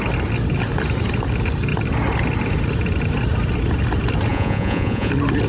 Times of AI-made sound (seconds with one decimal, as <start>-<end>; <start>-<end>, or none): 4.3-5.1